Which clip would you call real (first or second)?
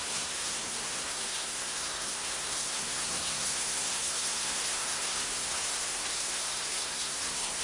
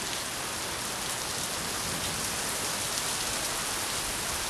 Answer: second